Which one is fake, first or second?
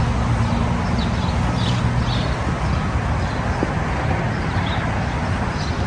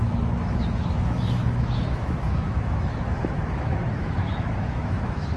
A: second